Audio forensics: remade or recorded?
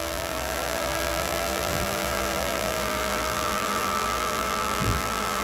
remade